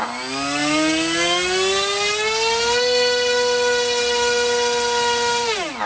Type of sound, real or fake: real